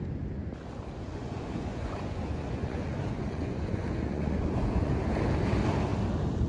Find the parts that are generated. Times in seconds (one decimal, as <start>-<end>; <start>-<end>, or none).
1.1-4.9